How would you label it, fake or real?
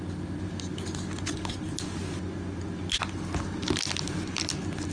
real